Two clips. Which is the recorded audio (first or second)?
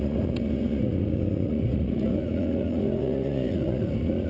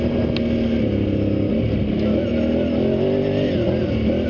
second